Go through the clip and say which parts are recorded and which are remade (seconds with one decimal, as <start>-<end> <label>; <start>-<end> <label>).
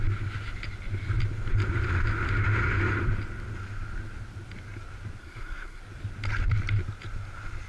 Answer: 0.0-5.2 recorded; 5.2-5.8 remade; 5.8-7.7 recorded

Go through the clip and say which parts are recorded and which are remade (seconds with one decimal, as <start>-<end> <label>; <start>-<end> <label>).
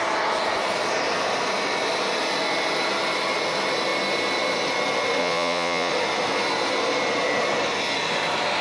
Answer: 0.0-5.2 recorded; 5.2-5.9 remade; 5.9-8.6 recorded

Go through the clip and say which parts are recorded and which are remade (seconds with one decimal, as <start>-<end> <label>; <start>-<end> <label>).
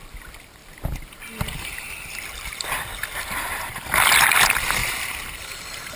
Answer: 0.0-0.6 recorded; 0.6-4.2 remade; 4.2-4.8 recorded; 4.8-5.6 remade; 5.6-6.0 recorded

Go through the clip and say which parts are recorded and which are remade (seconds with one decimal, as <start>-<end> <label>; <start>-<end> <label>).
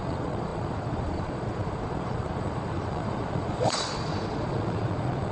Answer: 0.0-5.3 remade